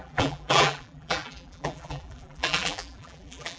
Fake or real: fake